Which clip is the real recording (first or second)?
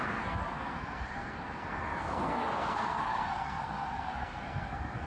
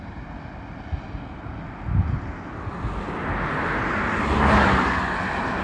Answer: second